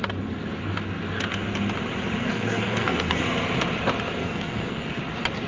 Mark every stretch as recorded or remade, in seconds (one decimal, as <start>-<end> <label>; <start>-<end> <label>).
0.0-2.2 recorded; 2.2-3.2 remade; 3.2-4.2 recorded; 4.2-5.0 remade; 5.0-5.5 recorded